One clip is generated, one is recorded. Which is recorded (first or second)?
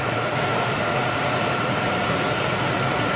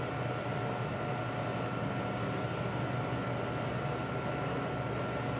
second